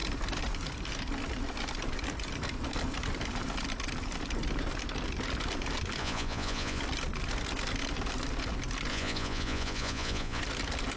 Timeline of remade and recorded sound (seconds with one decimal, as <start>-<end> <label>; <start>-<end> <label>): 0.0-6.0 recorded; 6.0-6.8 remade; 6.8-8.9 recorded; 8.9-10.4 remade; 10.4-11.0 recorded